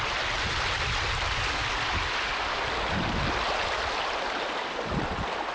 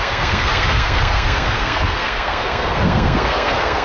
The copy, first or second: second